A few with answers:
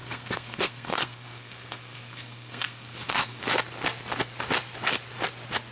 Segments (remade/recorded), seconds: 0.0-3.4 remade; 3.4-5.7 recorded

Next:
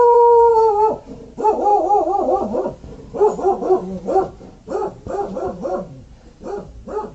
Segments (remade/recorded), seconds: 0.0-1.7 remade; 1.7-4.0 recorded; 4.0-7.1 remade

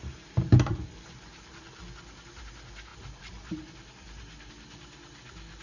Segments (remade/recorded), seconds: 0.0-1.6 remade; 1.6-2.9 recorded; 2.9-4.5 remade; 4.5-5.6 recorded

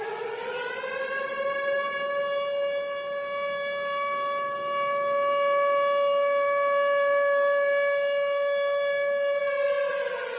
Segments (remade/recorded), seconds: 0.0-10.4 recorded

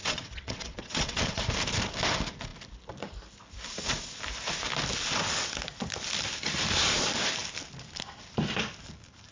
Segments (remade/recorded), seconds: 0.0-1.4 remade; 1.4-9.3 recorded

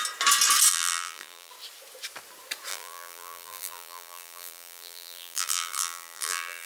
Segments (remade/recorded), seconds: 0.0-0.7 recorded; 0.7-1.5 remade; 1.5-2.7 recorded; 2.7-6.7 remade

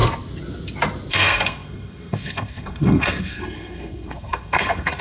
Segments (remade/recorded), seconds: 0.0-1.1 recorded; 1.1-5.0 remade

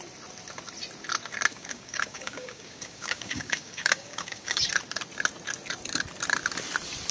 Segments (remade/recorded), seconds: 0.0-1.5 recorded; 1.5-4.6 remade; 4.6-7.1 recorded